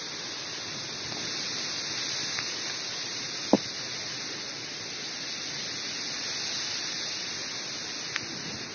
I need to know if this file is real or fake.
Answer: real